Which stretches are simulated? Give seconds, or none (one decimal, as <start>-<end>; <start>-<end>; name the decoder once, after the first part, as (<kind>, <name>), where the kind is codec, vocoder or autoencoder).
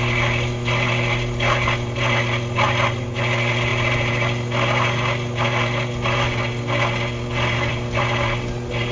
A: none